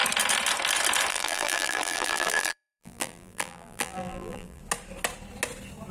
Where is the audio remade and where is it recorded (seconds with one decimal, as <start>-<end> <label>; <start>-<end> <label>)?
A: 0.0-1.1 recorded; 1.1-4.6 remade; 4.6-5.9 recorded